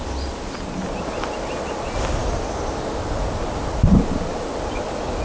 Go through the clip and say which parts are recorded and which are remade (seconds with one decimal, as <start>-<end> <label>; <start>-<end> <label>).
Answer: 0.0-5.2 recorded